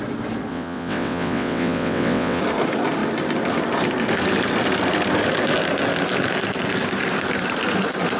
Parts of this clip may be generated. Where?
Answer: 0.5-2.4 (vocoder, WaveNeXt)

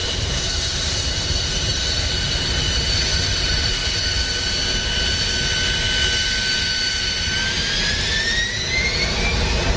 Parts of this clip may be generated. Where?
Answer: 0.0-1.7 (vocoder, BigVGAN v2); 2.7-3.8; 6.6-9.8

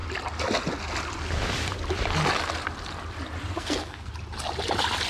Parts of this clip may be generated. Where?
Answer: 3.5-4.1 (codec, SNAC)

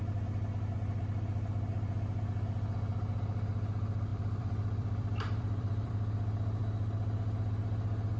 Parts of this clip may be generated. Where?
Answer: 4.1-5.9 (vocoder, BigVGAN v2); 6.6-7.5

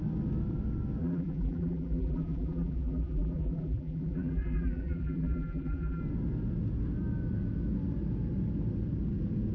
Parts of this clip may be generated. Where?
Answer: 1.0-6.0 (vocoder, BigVGAN v2)

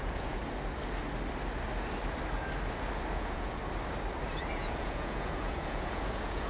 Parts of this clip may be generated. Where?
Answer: 0.0-0.4 (vocoder, Vocos); 3.1-3.6; 4.2-6.5